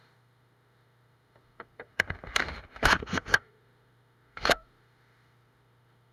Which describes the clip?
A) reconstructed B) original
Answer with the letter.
A